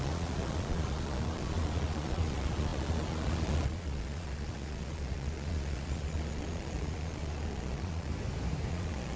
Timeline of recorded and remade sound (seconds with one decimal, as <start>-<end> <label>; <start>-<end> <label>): 0.0-8.1 remade; 8.1-8.7 recorded; 8.7-9.2 remade